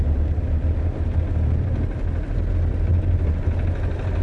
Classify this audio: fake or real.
real